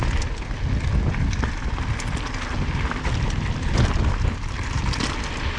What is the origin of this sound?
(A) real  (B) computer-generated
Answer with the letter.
A